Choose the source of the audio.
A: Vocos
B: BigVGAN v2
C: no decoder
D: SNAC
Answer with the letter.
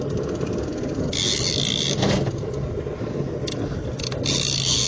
C